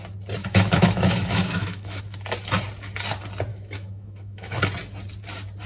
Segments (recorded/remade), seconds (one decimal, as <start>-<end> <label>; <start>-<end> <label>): 0.0-0.4 recorded; 0.4-2.0 remade; 2.0-3.5 recorded; 3.5-4.6 remade; 4.6-5.7 recorded